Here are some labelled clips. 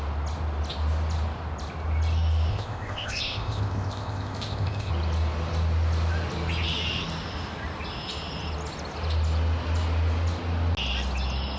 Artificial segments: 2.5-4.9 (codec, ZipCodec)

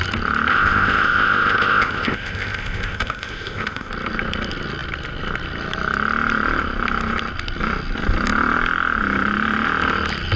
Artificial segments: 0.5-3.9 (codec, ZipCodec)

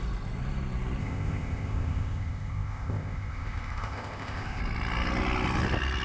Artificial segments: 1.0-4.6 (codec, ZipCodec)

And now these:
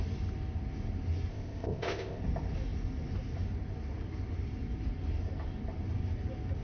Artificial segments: 1.3-2.2 (codec, ZipCodec)

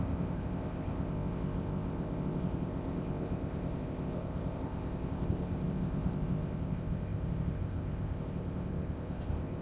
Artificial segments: 0.0-9.6 (codec, ZipCodec)